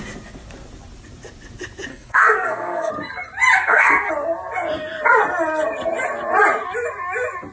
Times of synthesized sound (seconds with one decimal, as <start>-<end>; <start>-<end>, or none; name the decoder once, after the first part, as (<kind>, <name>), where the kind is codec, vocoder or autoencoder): 1.9-2.9 (codec, SNAC); 3.5-4.1